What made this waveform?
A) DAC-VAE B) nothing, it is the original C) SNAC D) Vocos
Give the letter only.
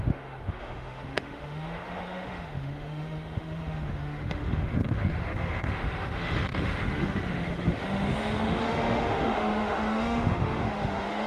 A